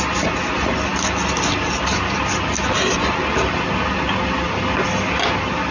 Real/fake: real